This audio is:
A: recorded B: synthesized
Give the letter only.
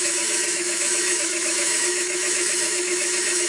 B